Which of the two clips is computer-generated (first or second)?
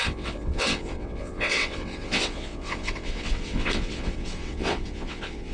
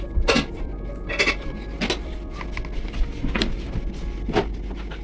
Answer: first